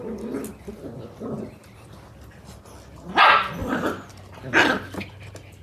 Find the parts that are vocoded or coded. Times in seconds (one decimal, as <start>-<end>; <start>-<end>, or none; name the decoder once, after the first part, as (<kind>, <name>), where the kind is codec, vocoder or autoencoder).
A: 3.6-5.1 (vocoder, BigVGAN v2)